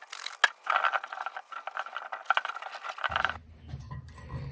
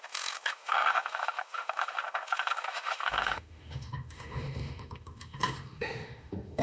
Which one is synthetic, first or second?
second